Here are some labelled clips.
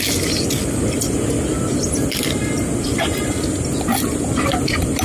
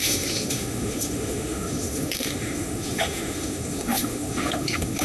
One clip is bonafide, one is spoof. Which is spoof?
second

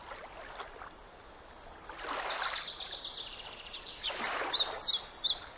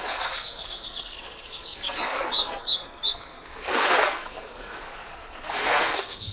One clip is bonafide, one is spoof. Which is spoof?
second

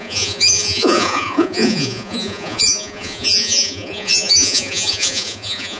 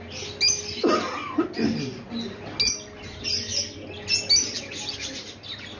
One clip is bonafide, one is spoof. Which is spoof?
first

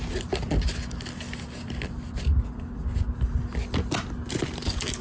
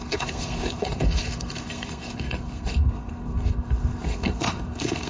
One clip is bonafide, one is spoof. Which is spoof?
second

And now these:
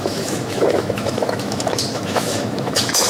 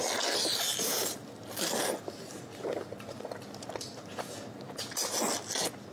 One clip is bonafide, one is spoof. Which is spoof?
first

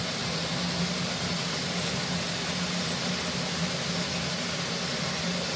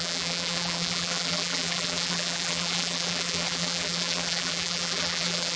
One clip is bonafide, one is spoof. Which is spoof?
second